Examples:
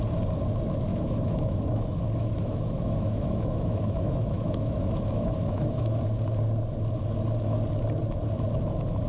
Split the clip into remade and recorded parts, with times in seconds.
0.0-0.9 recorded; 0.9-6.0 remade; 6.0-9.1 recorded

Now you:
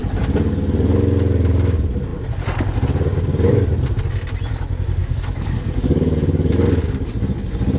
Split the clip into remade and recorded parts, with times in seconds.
0.0-5.0 recorded; 5.0-6.5 remade; 6.5-7.8 recorded

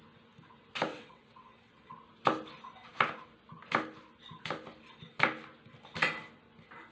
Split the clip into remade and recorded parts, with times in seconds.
0.0-0.9 recorded; 0.9-1.9 remade; 1.9-6.9 recorded

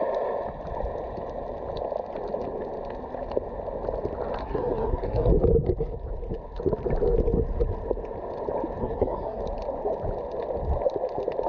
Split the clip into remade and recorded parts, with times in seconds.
0.0-4.4 recorded; 4.4-5.3 remade; 5.3-8.8 recorded; 8.8-9.4 remade; 9.4-11.5 recorded